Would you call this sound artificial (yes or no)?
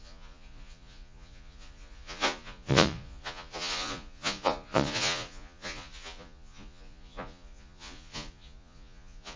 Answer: yes